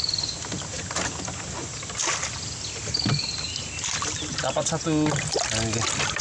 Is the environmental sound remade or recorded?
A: recorded